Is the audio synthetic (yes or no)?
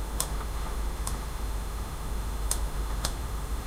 yes